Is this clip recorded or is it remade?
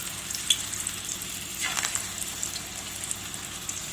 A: recorded